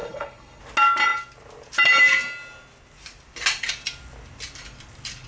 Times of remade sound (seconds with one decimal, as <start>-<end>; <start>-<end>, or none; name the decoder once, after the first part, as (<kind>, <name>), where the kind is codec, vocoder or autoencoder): 0.0-0.6 (codec, HILCodec)